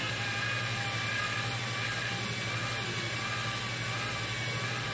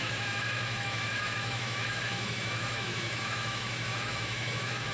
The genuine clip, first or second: first